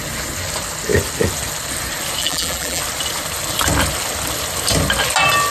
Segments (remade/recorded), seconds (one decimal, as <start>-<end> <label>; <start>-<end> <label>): 0.0-2.2 recorded; 2.2-2.8 remade; 2.8-5.5 recorded